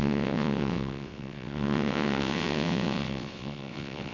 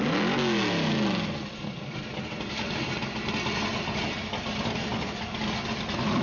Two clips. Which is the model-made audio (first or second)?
first